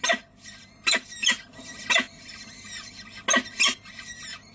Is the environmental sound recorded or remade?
recorded